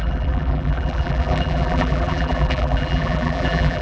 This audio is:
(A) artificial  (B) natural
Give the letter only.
A